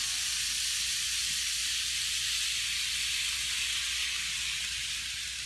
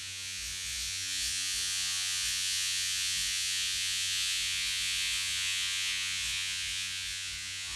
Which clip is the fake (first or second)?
second